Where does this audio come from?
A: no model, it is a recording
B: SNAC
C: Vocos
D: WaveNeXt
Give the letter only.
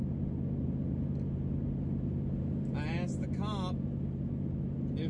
A